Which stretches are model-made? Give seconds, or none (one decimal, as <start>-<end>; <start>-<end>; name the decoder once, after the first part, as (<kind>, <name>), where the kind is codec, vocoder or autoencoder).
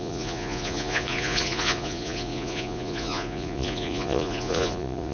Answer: 0.0-5.1 (vocoder, Vocos)